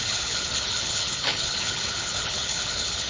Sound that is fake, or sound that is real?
fake